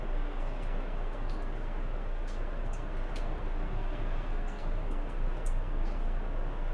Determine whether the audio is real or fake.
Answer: fake